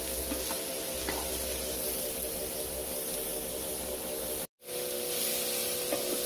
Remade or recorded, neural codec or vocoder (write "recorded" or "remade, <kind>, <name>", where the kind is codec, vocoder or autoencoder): recorded